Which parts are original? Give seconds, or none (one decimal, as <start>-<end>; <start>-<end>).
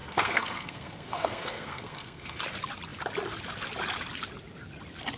2.4-5.2